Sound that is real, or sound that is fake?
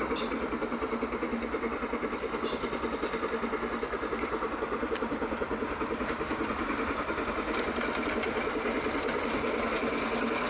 real